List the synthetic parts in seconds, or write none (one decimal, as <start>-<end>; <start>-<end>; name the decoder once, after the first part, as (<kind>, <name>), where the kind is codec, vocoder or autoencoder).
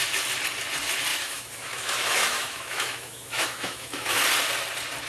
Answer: 1.1-4.2 (autoencoder, DAC-VAE)